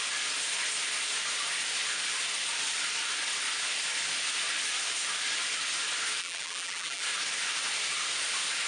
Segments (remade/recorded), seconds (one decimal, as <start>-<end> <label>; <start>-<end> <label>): 0.0-6.2 recorded; 6.2-7.0 remade; 7.0-8.7 recorded